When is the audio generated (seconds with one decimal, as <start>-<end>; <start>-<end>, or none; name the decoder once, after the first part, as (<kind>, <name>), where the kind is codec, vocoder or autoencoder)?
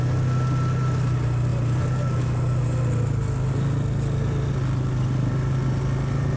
none